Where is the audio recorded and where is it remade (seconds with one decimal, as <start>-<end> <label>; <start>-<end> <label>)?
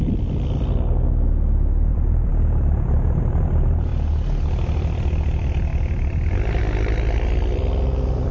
0.0-3.9 remade; 3.9-4.5 recorded; 4.5-8.3 remade